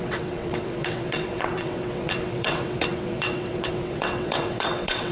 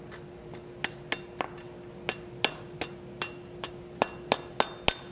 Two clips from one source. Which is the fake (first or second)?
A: first